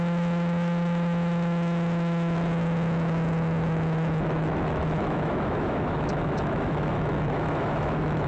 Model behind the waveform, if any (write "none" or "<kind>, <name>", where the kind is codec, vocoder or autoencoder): autoencoder, DAC-VAE